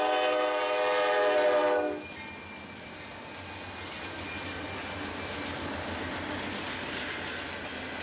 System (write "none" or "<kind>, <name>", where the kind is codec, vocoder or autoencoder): none